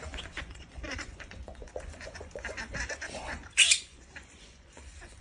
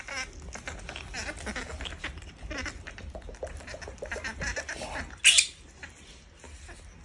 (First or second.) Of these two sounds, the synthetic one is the first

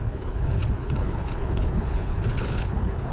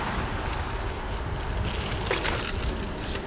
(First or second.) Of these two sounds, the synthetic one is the first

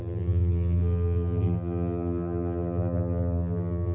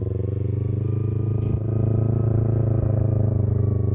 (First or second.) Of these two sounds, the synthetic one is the first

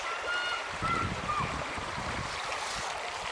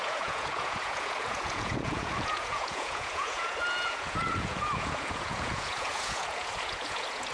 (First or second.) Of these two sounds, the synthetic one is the second